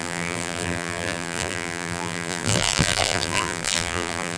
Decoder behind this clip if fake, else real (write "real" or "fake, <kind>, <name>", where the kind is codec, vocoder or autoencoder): fake, vocoder, BigVGAN v2